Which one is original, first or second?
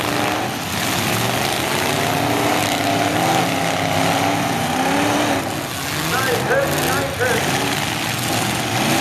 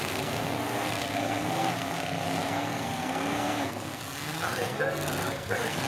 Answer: first